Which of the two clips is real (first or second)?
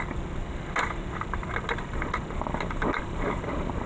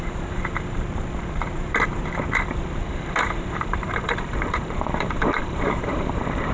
first